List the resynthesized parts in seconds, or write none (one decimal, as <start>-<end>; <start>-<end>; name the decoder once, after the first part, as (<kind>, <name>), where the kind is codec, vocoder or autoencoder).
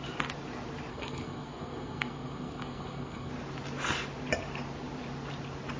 0.9-3.3 (codec, SNAC)